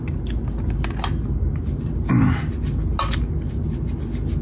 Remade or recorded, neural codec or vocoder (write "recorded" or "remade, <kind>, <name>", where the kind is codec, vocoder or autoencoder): recorded